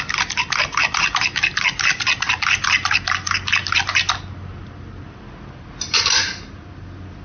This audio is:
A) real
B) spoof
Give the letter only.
A